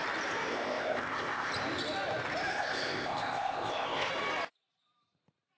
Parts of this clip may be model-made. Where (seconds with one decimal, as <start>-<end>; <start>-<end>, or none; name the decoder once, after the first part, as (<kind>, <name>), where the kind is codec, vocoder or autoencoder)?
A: 0.5-1.5 (codec, ZipCodec); 2.5-4.1